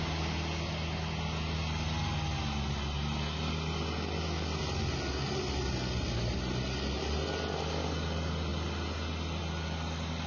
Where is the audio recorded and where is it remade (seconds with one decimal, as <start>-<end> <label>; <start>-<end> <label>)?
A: 0.0-10.3 recorded